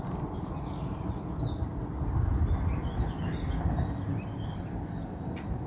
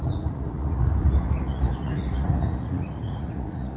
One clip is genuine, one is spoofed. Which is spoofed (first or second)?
second